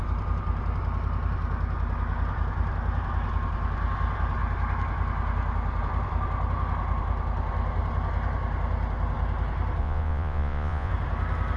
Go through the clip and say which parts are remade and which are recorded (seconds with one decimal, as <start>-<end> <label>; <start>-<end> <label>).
0.0-9.8 recorded; 9.8-10.9 remade; 10.9-11.6 recorded